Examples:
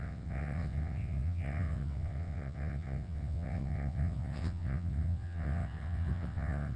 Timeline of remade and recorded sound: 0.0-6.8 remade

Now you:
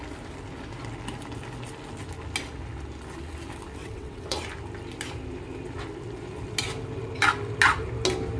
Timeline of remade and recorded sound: 0.0-3.8 recorded; 3.8-4.4 remade; 4.4-8.4 recorded

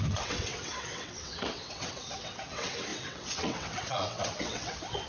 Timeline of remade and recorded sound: 0.0-5.1 remade

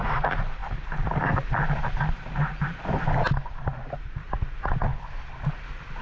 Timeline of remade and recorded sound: 0.0-6.0 recorded

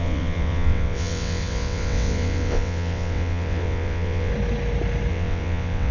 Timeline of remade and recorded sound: 0.0-4.3 remade; 4.3-5.1 recorded; 5.1-5.9 remade

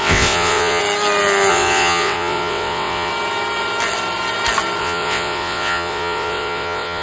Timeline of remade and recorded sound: 0.0-0.8 remade; 0.8-1.5 recorded; 1.5-3.1 remade; 3.1-4.8 recorded; 4.8-7.0 remade

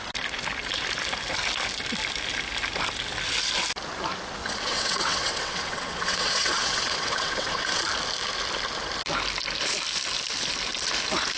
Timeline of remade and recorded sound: 0.0-4.4 recorded; 4.4-7.8 remade; 7.8-11.4 recorded

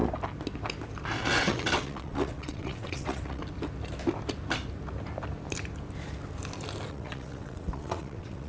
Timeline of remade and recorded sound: 0.0-1.2 recorded; 1.2-3.4 remade; 3.4-6.9 recorded; 6.9-8.5 remade